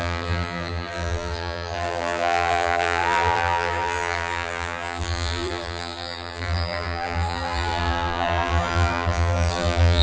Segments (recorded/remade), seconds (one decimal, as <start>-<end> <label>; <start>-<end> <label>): 0.0-10.0 remade